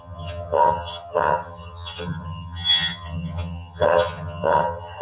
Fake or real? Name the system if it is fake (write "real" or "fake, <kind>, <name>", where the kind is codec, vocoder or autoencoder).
fake, vocoder, HiFi-GAN